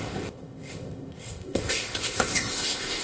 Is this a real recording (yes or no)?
no